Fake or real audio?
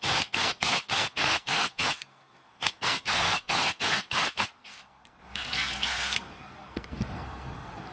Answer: fake